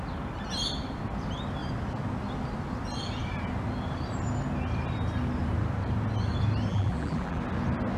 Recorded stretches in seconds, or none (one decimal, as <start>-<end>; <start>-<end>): 0.0-6.7; 7.4-8.0